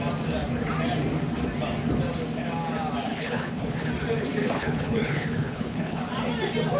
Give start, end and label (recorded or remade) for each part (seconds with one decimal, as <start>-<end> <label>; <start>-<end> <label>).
0.0-3.1 recorded; 3.1-3.9 remade; 3.9-4.4 recorded; 4.4-6.0 remade; 6.0-6.8 recorded